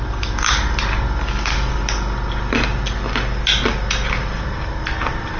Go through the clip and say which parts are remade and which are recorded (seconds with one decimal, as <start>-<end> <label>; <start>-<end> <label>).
0.0-5.4 recorded